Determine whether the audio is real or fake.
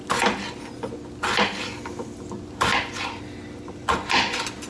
real